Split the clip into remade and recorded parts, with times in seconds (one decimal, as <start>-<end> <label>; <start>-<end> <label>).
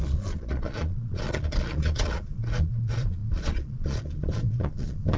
0.0-5.2 remade